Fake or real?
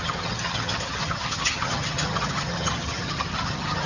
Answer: fake